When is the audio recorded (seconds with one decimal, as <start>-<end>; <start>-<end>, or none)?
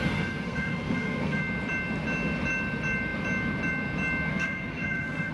1.4-4.3